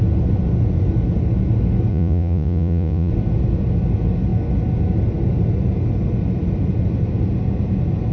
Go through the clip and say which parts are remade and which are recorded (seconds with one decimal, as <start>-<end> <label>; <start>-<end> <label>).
0.0-1.9 recorded; 1.9-3.1 remade; 3.1-8.1 recorded